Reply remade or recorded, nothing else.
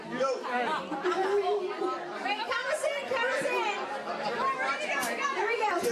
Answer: recorded